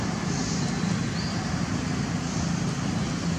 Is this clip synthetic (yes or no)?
no